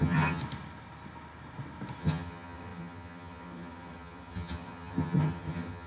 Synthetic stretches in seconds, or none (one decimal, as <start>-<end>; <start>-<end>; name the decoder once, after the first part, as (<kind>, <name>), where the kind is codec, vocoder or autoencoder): 0.0-0.4 (vocoder, HiFi-GAN); 2.0-5.9